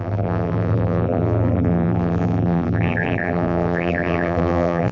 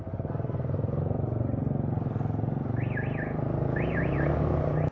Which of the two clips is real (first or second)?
second